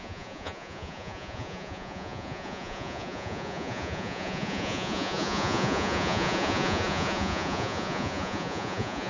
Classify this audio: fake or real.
fake